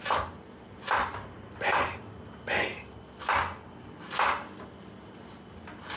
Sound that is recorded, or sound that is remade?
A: recorded